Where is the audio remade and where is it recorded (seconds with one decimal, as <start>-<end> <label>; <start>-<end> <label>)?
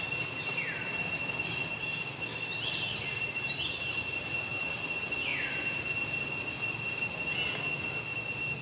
0.0-8.6 recorded